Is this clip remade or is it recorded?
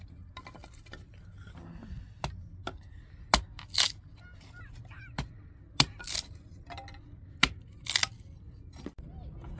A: recorded